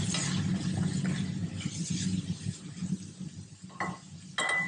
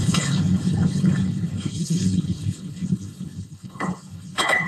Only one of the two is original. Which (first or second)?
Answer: first